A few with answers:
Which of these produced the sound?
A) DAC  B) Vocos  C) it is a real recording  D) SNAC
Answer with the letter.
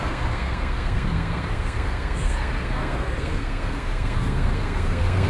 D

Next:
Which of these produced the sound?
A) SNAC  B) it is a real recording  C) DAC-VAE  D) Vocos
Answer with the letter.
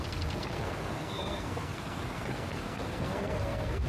A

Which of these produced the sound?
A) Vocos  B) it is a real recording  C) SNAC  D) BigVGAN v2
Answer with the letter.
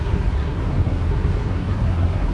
C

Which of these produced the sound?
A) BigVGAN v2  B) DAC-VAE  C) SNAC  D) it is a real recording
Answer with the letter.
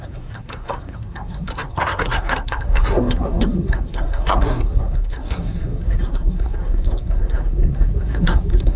C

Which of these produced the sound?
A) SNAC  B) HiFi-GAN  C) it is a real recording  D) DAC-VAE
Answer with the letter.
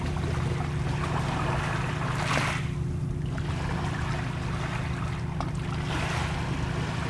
C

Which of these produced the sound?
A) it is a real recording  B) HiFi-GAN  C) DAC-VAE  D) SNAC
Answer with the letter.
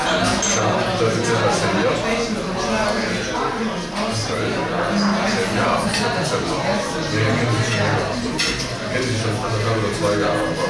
A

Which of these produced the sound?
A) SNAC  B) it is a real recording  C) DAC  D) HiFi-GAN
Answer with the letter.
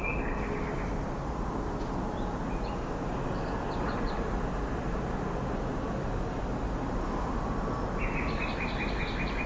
B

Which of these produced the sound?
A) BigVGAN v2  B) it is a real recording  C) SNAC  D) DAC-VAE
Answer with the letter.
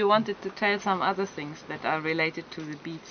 B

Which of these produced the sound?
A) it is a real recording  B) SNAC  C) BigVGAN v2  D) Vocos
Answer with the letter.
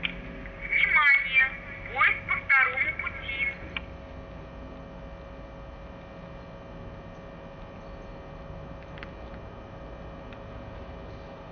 A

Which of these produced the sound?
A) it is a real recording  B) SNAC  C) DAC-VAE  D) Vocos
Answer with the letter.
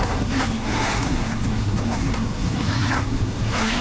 B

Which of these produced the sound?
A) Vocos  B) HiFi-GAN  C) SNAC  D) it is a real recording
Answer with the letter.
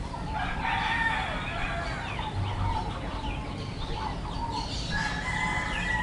D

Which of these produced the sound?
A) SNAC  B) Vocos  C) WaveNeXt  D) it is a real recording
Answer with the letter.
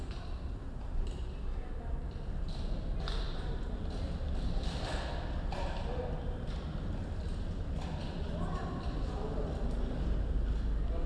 D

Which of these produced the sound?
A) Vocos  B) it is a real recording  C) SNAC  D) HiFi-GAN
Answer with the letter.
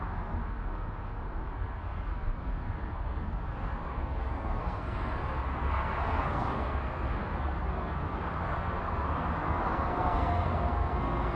C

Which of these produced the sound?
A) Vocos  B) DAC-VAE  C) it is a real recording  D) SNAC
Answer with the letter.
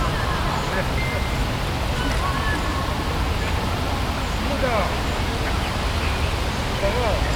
C